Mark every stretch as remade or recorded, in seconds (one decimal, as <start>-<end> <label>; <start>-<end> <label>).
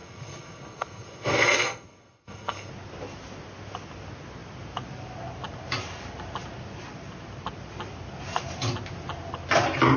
0.0-2.7 remade; 2.7-10.0 recorded